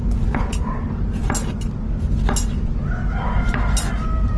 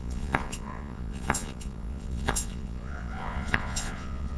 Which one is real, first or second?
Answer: first